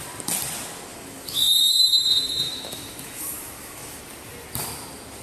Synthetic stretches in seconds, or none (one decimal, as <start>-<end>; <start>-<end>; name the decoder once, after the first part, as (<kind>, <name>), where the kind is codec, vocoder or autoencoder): 0.9-4.0 (autoencoder, DAC-VAE)